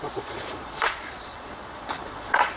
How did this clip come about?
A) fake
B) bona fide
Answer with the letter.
A